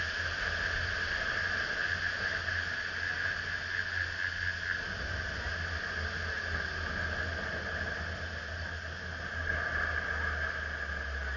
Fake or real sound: real